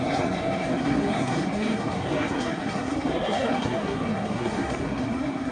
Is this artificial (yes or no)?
yes